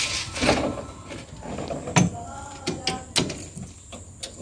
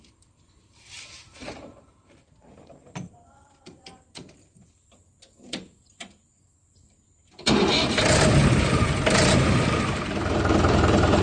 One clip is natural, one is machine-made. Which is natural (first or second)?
first